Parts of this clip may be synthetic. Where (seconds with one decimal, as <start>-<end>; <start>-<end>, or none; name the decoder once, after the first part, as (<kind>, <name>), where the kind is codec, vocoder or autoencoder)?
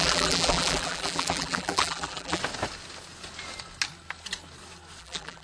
0.0-2.4 (vocoder, BigVGAN v2); 5.0-5.4